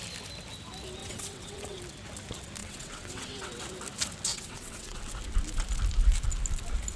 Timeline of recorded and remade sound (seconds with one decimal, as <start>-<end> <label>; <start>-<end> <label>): 0.0-1.0 recorded; 1.0-1.8 remade; 1.8-2.6 recorded; 2.6-3.6 remade; 3.6-4.3 recorded; 4.3-5.0 remade; 5.0-7.0 recorded